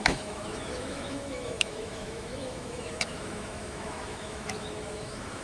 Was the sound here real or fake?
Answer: fake